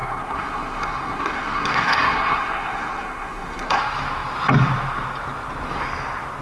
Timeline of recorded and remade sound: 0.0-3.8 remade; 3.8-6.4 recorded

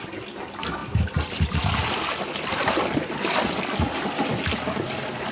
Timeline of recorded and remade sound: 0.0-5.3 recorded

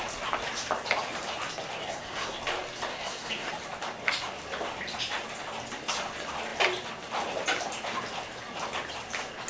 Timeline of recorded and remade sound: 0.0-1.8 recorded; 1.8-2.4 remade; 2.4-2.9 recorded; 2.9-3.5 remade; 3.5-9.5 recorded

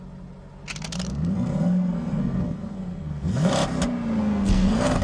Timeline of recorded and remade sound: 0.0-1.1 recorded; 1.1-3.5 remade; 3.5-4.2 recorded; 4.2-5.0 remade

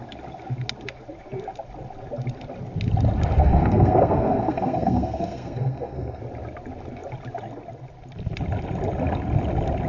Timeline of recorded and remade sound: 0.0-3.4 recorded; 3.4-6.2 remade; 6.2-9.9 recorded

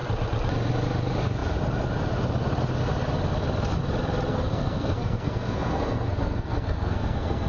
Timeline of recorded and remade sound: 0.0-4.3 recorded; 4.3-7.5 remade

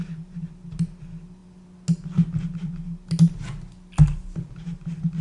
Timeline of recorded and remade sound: 0.0-5.2 recorded